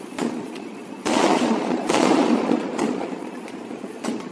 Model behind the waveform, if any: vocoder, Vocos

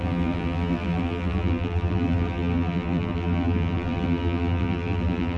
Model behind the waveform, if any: vocoder, BigVGAN v2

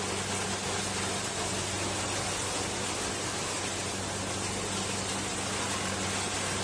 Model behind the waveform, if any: none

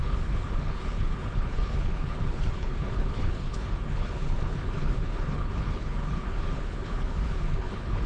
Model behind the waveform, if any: codec, HILCodec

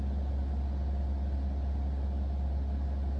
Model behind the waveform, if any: none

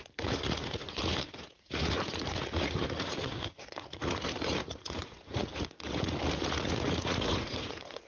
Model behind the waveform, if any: vocoder, Vocos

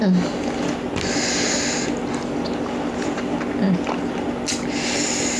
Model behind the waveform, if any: none